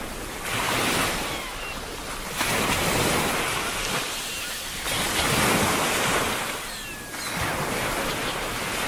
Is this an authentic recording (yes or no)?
yes